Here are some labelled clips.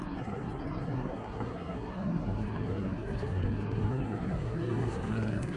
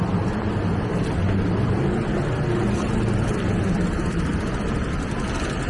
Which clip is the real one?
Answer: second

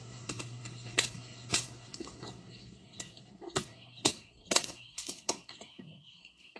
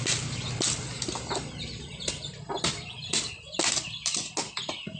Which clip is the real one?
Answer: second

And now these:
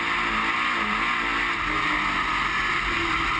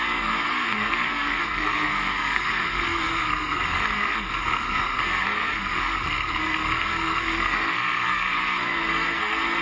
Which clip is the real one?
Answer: first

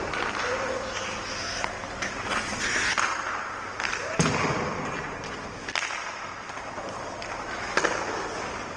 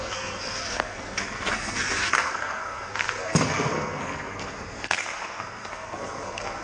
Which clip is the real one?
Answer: first